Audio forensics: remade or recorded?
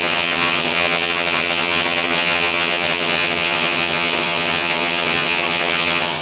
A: remade